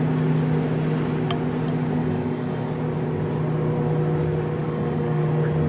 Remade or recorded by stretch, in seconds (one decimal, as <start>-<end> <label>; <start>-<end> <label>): 0.0-2.0 recorded; 2.0-2.7 remade; 2.7-4.6 recorded; 4.6-5.2 remade; 5.2-5.7 recorded